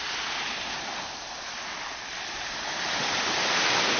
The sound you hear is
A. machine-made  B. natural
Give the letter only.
B